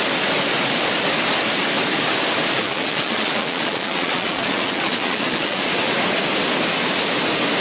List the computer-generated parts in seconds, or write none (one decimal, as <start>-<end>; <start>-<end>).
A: 2.6-5.6